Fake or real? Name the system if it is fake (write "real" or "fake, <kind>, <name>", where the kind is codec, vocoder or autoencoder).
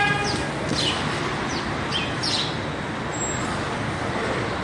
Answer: real